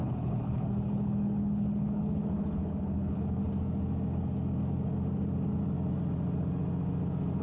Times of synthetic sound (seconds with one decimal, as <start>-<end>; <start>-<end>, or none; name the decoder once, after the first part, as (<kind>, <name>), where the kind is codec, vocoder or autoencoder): 0.0-3.4 (codec, HILCodec)